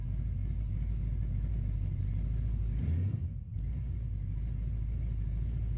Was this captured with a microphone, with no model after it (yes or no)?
yes